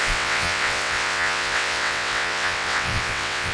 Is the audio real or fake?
fake